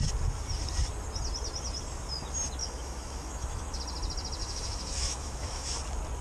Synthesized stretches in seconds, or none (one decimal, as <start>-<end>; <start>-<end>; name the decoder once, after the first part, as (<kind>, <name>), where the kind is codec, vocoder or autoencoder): 2.6-3.8 (autoencoder, DAC-VAE); 4.4-5.8